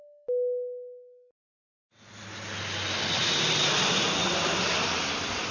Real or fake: real